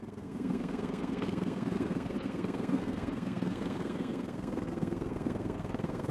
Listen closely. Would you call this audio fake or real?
fake